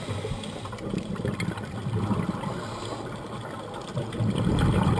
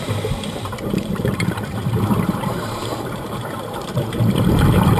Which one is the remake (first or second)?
second